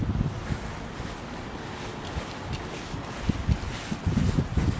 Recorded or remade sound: recorded